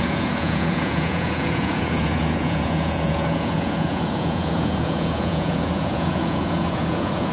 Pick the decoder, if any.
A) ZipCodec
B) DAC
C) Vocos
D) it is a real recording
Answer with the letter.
C